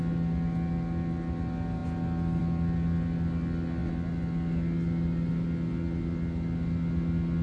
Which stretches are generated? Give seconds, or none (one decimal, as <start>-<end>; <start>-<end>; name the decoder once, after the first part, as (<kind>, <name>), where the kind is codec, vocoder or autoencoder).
none